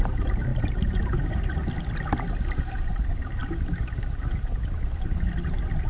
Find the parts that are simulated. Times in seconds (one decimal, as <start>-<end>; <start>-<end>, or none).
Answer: 0.0-1.6; 2.5-3.4